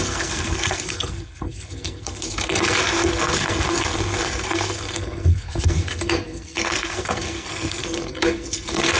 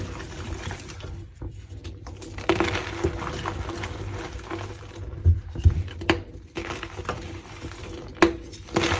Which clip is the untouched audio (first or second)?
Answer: second